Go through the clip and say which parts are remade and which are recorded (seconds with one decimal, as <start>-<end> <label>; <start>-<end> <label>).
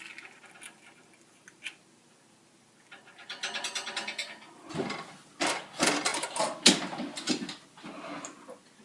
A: 0.0-8.8 recorded